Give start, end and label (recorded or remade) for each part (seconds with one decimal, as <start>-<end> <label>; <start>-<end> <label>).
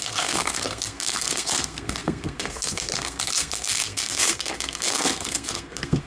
0.0-6.1 remade